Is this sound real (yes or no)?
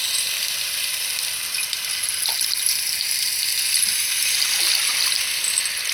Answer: yes